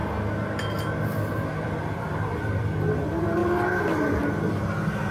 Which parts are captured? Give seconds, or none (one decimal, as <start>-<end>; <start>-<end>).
0.0-5.1